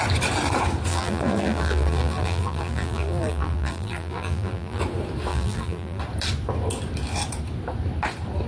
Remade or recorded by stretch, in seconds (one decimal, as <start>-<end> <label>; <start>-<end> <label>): 0.0-0.9 recorded; 0.9-4.8 remade; 4.8-5.3 recorded; 5.3-6.0 remade; 6.0-8.5 recorded